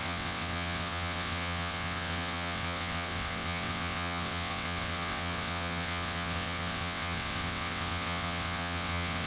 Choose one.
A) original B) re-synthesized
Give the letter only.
B